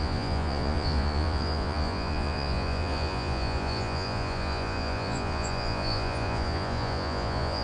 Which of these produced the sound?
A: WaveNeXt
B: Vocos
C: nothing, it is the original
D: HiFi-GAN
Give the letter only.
B